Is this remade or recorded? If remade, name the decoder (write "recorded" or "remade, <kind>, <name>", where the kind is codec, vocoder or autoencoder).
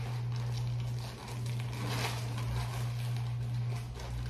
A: recorded